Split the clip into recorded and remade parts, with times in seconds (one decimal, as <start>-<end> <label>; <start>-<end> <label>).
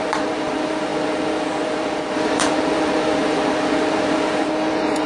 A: 0.0-5.1 remade